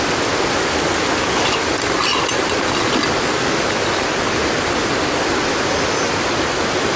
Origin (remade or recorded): recorded